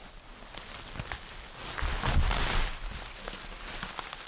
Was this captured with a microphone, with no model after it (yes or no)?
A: yes